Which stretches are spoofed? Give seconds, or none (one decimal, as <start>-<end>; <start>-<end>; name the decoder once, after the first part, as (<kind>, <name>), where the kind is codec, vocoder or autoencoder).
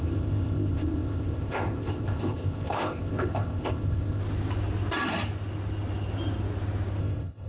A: 0.0-4.2 (codec, ZipCodec); 7.0-7.5